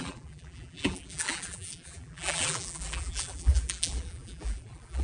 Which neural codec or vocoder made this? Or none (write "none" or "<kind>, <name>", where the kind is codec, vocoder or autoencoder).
vocoder, BigVGAN v2